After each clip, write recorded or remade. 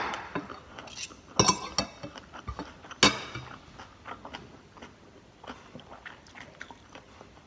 recorded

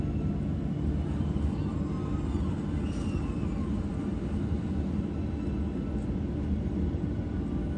recorded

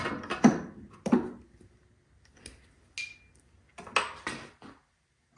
recorded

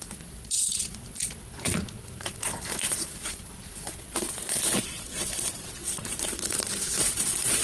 remade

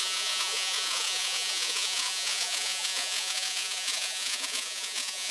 remade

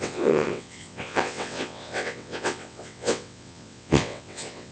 remade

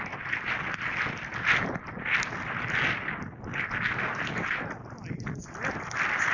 recorded